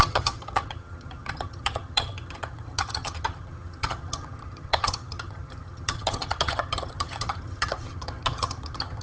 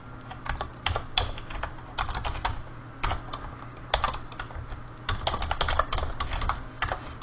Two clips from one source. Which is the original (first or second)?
second